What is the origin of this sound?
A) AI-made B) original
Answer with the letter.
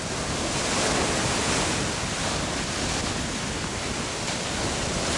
B